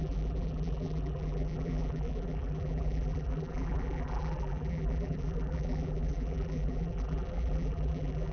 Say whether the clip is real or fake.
fake